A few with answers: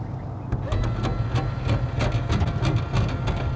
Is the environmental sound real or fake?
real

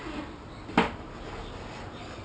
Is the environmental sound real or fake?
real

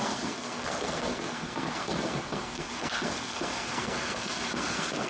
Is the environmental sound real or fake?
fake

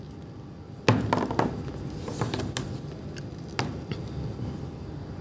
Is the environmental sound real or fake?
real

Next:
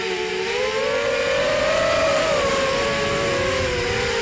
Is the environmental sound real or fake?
real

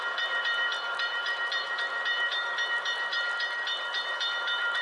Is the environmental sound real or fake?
fake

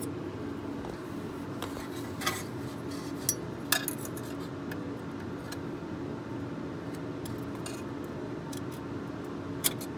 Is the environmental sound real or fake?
real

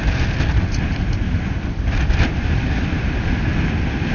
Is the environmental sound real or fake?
real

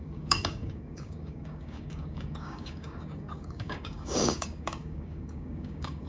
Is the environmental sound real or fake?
fake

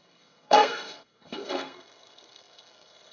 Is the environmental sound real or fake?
fake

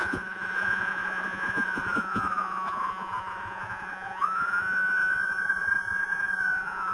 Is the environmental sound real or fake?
fake